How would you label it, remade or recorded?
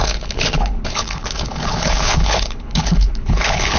remade